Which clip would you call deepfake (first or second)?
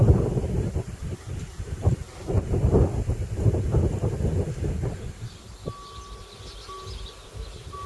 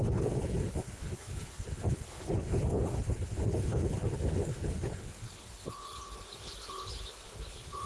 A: second